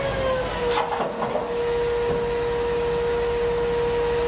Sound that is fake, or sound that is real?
real